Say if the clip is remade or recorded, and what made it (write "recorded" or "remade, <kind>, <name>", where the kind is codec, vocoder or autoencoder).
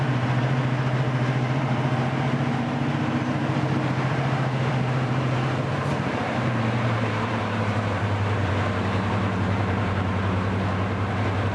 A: remade, vocoder, BigVGAN v2